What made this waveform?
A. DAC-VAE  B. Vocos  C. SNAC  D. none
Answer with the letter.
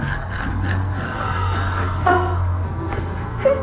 C